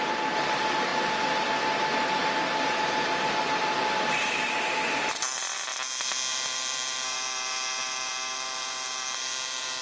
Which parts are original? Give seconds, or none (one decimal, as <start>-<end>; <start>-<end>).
0.9-2.6; 5.7-6.3